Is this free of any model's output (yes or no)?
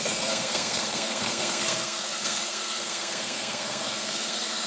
no